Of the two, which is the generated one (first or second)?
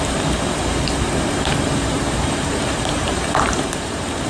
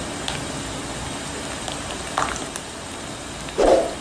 first